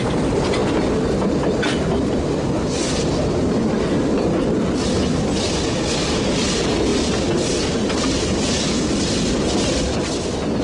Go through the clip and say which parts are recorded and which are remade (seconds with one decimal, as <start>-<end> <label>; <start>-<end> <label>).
0.0-10.6 recorded